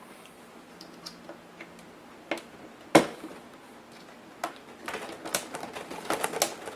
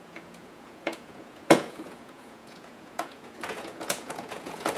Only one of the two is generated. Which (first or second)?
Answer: second